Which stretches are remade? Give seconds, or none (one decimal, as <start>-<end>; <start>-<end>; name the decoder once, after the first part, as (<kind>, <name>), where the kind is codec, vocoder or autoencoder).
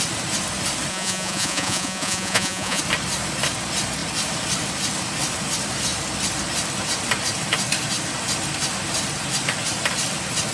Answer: 0.9-2.8 (vocoder, Vocos)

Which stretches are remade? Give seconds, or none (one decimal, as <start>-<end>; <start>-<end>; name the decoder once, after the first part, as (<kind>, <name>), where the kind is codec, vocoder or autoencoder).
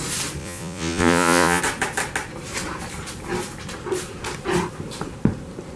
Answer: 0.4-1.6 (vocoder, Vocos)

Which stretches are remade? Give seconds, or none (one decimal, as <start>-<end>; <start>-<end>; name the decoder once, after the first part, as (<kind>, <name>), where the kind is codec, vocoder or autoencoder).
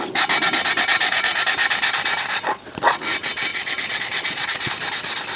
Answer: 0.9-1.4 (vocoder, Vocos); 2.3-3.0; 3.5-4.7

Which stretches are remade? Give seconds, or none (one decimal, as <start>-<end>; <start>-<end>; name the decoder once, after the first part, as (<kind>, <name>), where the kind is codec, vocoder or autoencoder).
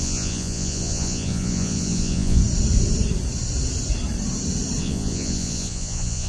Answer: 0.0-2.4 (vocoder, Vocos); 4.8-6.3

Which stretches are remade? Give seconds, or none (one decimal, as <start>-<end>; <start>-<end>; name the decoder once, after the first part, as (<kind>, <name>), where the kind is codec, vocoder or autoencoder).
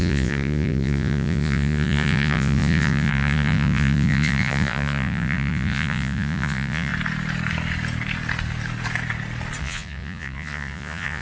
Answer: 0.0-6.9 (vocoder, Vocos); 9.6-11.2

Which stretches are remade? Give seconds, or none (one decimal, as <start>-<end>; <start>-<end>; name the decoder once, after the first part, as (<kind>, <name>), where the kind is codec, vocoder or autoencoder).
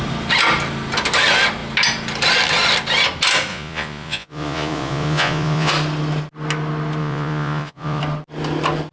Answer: 3.5-5.7 (vocoder, Vocos); 7.0-8.0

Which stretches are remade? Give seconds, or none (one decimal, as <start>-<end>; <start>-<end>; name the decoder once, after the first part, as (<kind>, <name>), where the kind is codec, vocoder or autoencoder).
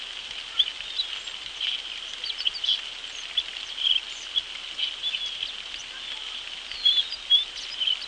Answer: none